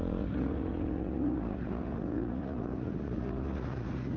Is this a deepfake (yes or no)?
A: yes